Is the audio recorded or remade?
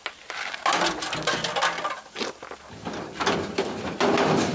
recorded